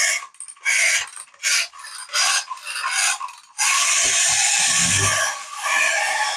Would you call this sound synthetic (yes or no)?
no